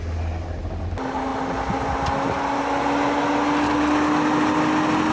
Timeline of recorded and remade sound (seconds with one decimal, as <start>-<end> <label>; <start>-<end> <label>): 0.0-5.1 recorded